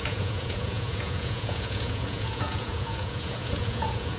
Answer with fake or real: fake